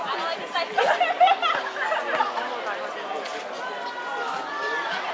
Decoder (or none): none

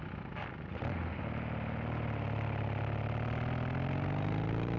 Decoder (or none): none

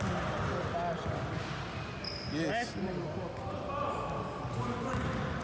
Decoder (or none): none